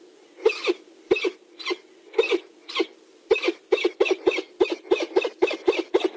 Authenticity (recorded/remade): recorded